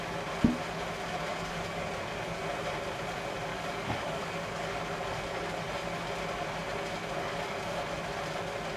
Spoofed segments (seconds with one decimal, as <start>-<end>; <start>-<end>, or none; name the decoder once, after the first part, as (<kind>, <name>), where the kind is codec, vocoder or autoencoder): 1.3-1.9 (codec, DAC); 3.5-4.8